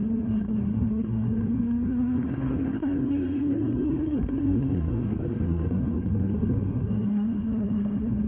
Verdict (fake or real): fake